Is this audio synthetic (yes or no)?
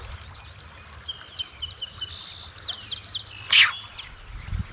no